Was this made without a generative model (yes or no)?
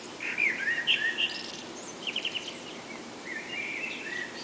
no